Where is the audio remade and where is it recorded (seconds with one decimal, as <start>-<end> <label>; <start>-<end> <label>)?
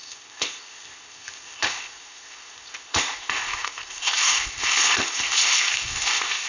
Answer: 0.0-6.5 remade